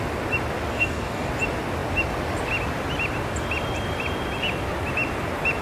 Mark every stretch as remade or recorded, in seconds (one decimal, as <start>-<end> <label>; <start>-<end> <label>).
0.0-0.7 recorded; 0.7-1.3 remade; 1.3-5.6 recorded